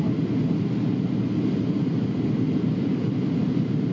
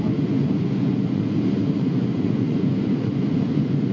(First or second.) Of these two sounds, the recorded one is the first